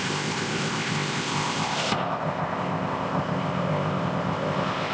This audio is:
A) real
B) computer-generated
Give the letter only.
B